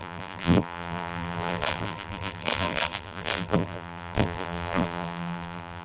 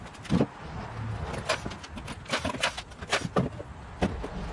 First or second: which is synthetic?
first